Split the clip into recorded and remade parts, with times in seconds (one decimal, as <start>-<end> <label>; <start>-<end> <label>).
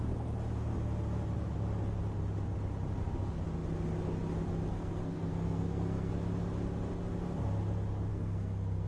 0.0-4.7 recorded; 4.7-6.1 remade; 6.1-8.1 recorded; 8.1-8.9 remade